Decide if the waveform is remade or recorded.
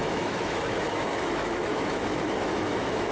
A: remade